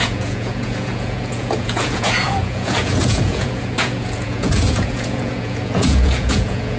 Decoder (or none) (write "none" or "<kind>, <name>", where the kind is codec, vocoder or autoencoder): vocoder, Vocos